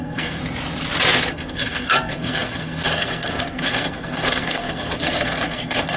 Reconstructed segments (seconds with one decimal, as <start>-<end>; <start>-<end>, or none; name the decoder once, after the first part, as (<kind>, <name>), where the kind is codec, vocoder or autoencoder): 0.0-0.4 (codec, SNAC); 1.3-6.0